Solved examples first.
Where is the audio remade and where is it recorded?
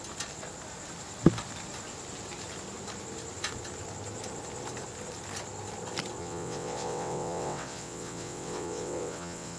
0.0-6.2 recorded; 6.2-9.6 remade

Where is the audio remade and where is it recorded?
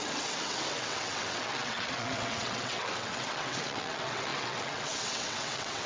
0.0-5.9 remade